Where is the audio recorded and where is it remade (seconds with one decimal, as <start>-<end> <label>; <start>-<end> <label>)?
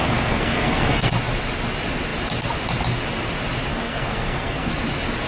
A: 0.0-1.1 remade; 1.1-3.7 recorded; 3.7-4.7 remade; 4.7-5.3 recorded